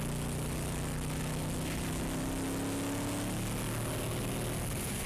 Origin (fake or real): real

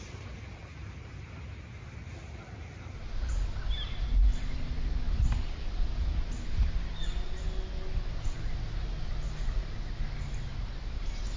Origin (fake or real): real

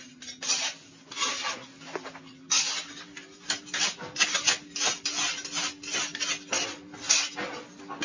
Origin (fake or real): real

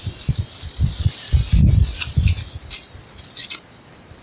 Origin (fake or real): real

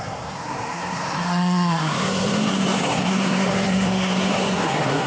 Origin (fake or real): fake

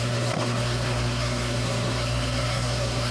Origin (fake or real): fake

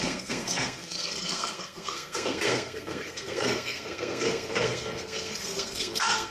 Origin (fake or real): fake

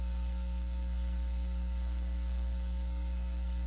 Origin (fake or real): fake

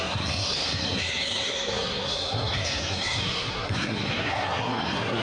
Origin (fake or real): fake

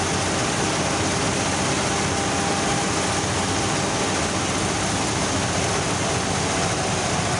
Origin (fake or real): real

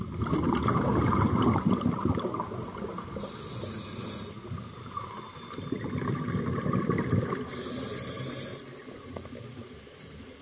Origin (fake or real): real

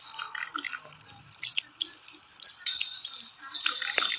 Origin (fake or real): real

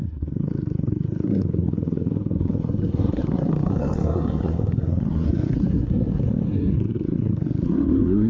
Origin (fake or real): fake